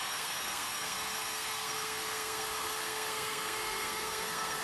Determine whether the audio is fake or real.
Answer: fake